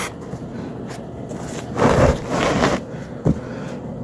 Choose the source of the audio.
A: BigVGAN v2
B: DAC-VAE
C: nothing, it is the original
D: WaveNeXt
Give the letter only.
C